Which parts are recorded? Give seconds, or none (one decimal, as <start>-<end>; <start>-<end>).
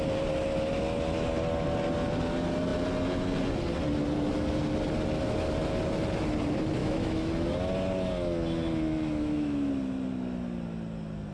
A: 0.0-6.8; 7.3-8.9; 9.7-11.3